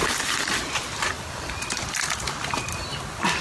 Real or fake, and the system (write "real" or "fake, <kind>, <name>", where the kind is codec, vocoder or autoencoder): real